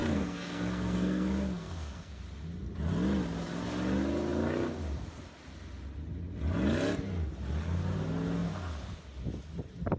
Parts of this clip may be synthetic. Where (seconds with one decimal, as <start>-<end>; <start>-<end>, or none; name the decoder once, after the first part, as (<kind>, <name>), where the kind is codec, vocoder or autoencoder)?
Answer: 0.0-2.2 (codec, SNAC)